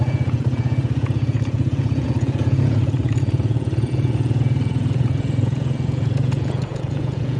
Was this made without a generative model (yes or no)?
no